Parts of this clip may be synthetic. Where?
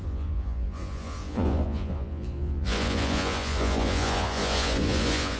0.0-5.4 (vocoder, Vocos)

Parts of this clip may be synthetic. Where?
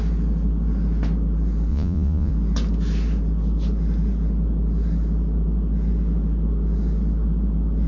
1.7-2.3 (vocoder, Vocos)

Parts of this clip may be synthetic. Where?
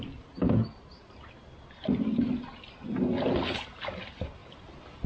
none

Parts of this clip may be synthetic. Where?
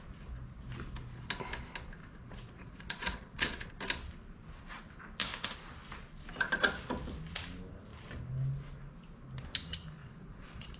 2.0-3.7 (vocoder, Vocos); 10.0-10.8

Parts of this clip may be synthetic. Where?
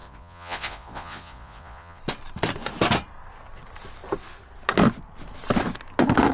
0.0-2.0 (vocoder, Vocos)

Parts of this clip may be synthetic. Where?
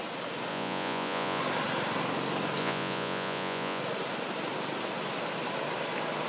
0.5-1.4 (vocoder, Vocos); 2.6-3.8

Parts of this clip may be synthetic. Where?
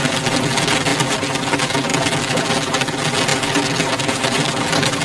none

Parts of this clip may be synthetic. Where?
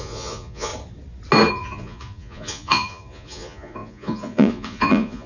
0.0-0.7 (vocoder, Vocos); 1.5-5.3